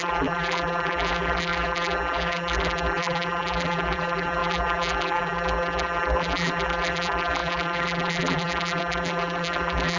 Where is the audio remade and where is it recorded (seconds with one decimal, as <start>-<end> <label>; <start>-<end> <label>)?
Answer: 0.0-10.0 remade